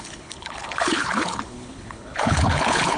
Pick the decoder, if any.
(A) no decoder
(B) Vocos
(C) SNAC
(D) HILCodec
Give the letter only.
D